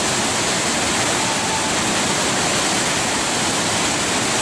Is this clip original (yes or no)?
yes